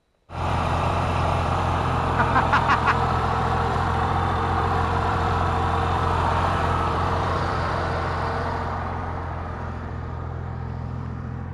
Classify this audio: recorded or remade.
remade